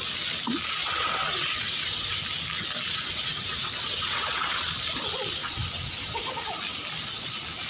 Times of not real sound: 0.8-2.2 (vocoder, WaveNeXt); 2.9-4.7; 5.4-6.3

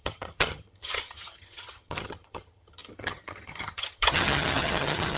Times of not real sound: 0.0-5.2 (vocoder, HiFi-GAN)

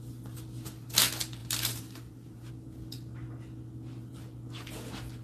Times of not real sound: 1.4-2.5 (vocoder, BigVGAN v2)

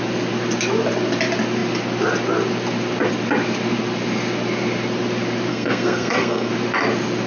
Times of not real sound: 5.5-6.5 (codec, SNAC)

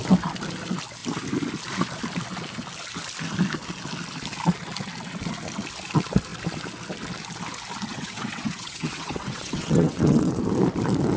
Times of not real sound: 7.9-10.4 (vocoder, WaveNeXt)

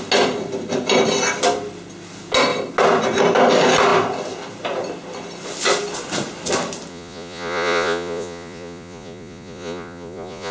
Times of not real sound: 6.9-10.5 (vocoder, Vocos)

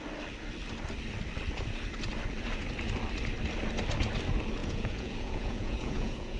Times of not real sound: 4.6-6.4 (vocoder, Vocos)

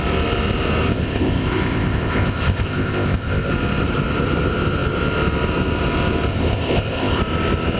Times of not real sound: 0.9-3.5 (codec, ZipCodec); 6.3-7.2